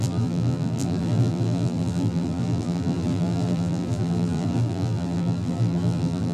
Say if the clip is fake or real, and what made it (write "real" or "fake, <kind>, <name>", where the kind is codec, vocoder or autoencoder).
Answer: fake, vocoder, BigVGAN v2